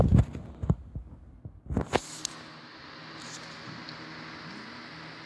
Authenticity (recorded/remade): recorded